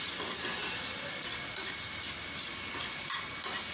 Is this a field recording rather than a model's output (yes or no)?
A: yes